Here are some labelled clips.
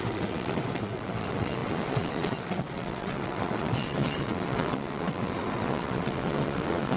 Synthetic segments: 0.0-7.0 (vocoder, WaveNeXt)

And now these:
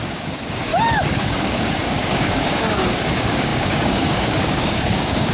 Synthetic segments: 0.0-0.7 (codec, DAC); 1.2-5.3

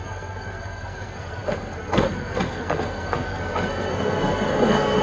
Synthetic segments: 0.0-5.0 (codec, SNAC)

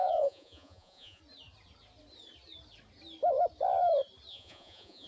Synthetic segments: 0.0-1.2 (vocoder, Vocos); 4.3-5.1

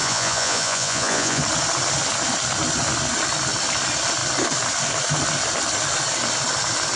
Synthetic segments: 0.0-1.4 (vocoder, Vocos)

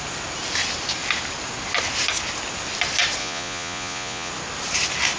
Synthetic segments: 3.2-4.3 (vocoder, Vocos)

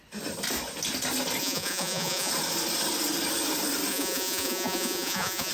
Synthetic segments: 1.4-2.3 (vocoder, Vocos); 3.9-5.5

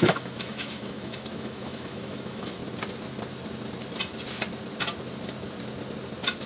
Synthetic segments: 0.0-2.6 (autoencoder, DAC-VAE)